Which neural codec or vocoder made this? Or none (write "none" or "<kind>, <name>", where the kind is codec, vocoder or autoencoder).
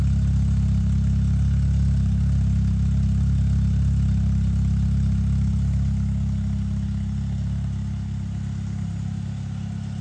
none